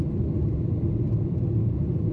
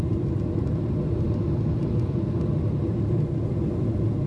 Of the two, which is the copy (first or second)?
first